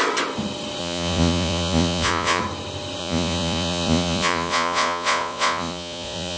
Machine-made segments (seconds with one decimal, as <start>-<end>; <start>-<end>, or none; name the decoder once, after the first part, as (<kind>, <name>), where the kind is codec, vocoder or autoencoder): 0.8-2.4 (vocoder, Vocos); 3.0-6.4